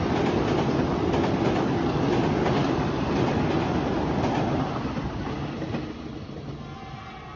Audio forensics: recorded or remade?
recorded